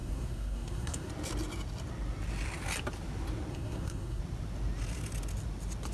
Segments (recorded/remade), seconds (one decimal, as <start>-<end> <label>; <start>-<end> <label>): 0.0-1.1 remade; 1.1-3.5 recorded; 3.5-4.2 remade; 4.2-5.9 recorded